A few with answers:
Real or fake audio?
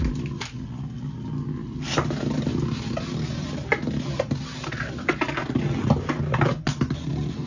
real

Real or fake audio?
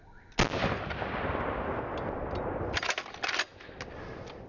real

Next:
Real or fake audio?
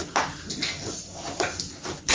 real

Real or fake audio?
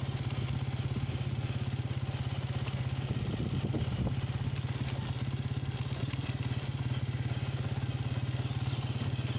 real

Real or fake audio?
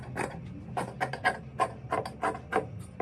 real